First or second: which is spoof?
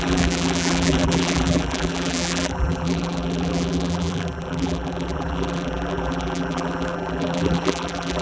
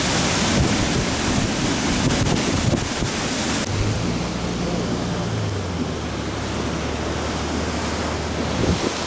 first